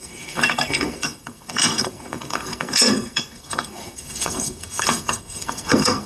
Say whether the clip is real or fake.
fake